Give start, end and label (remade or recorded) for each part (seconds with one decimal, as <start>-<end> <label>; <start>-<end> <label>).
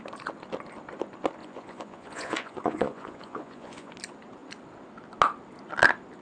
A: 0.0-1.4 recorded; 1.4-3.9 remade; 3.9-6.2 recorded